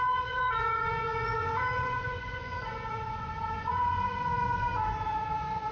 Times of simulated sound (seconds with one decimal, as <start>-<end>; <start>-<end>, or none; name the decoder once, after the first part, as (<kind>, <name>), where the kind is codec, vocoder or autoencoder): 0.0-5.7 (vocoder, Vocos)